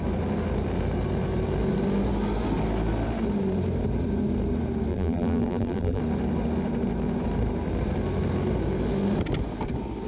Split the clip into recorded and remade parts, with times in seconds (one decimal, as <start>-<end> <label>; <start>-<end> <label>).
0.0-4.9 recorded; 4.9-6.0 remade; 6.0-10.1 recorded